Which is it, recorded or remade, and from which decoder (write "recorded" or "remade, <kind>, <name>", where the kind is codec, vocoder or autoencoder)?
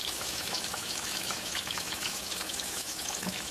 remade, autoencoder, DAC-VAE